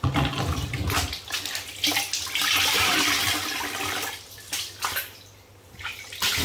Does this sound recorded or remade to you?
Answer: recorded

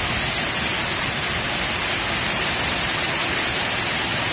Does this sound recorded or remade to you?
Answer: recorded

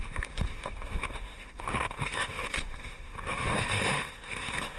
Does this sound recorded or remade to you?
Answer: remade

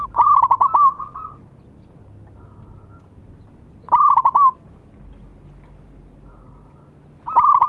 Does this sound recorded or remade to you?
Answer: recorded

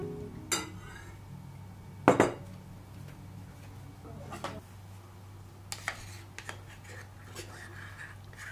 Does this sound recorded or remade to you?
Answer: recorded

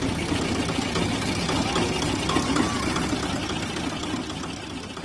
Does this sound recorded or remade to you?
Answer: recorded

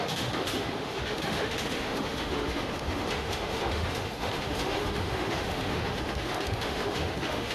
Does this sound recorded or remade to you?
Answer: remade